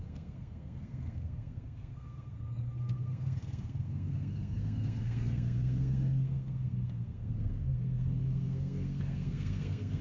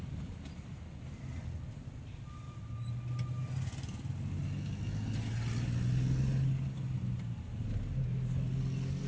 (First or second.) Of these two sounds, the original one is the second